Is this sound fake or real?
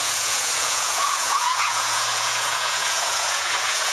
fake